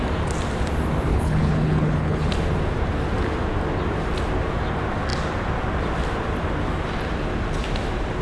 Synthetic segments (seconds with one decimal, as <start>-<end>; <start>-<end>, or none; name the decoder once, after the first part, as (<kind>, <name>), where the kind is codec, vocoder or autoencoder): 1.1-2.3 (codec, HILCodec)